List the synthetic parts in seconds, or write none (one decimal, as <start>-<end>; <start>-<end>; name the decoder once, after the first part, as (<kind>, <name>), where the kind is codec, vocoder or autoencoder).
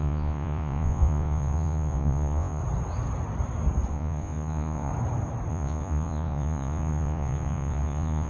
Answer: 0.0-2.6 (vocoder, Vocos); 3.9-4.9; 5.5-8.3